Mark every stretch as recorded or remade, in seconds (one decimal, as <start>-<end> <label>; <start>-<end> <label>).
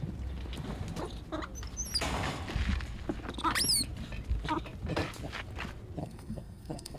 0.0-6.0 recorded; 6.0-7.0 remade